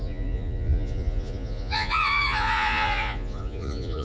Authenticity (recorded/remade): remade